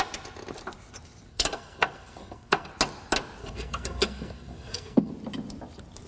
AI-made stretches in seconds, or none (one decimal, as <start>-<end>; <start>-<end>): 1.3-2.7; 3.4-5.1